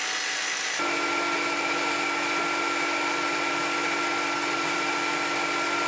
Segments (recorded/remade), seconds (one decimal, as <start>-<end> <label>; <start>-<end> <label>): 0.0-4.1 recorded; 4.1-4.9 remade; 4.9-5.9 recorded